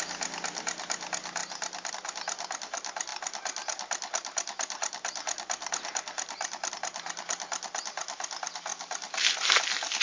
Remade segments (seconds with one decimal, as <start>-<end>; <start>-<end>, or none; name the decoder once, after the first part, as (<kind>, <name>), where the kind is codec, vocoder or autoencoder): none